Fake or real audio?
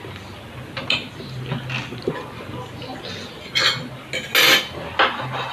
real